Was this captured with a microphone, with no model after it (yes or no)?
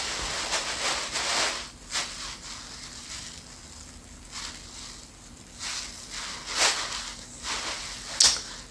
yes